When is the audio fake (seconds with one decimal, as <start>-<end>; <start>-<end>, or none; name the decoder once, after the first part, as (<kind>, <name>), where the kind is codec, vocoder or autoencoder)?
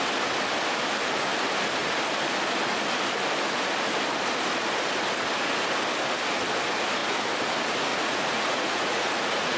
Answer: 7.9-9.6 (vocoder, Vocos)